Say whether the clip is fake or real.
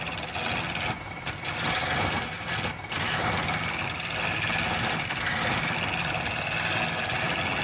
real